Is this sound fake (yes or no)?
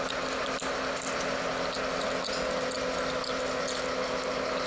no